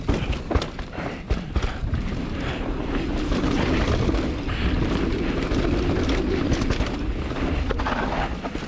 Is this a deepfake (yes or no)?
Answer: no